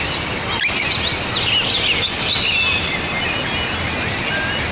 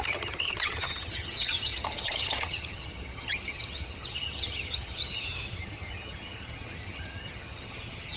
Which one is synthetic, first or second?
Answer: second